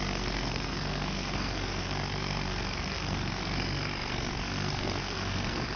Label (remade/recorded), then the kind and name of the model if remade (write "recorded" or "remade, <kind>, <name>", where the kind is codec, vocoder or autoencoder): remade, codec, SNAC